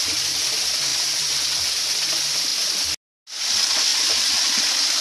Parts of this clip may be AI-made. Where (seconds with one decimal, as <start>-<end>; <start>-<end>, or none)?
3.9-4.6